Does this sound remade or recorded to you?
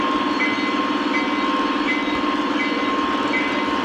recorded